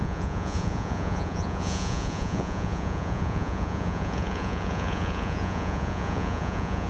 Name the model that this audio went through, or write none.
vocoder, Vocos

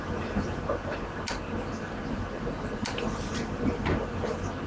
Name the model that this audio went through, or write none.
none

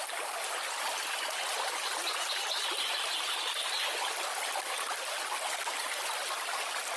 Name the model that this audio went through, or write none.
none